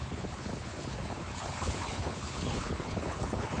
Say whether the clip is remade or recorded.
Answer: remade